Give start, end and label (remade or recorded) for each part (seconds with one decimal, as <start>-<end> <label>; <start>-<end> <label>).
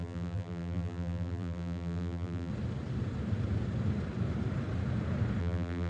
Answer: 0.0-2.5 remade; 2.5-5.4 recorded; 5.4-5.9 remade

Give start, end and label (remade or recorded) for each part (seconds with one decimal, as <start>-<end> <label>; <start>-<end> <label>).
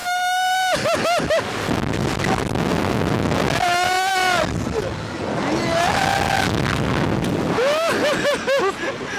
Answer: 0.0-9.2 recorded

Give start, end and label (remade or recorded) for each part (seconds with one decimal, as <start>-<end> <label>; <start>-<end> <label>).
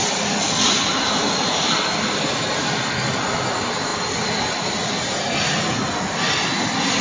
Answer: 0.0-7.0 recorded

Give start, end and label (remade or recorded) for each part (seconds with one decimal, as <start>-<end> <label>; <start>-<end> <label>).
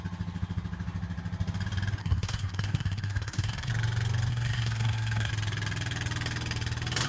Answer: 0.0-2.0 recorded; 2.0-3.7 remade; 3.7-4.3 recorded; 4.3-5.3 remade; 5.3-7.1 recorded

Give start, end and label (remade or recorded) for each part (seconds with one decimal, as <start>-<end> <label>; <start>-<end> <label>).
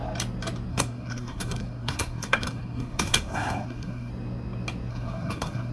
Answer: 0.0-0.7 recorded; 0.7-4.1 remade; 4.1-4.9 recorded; 4.9-5.7 remade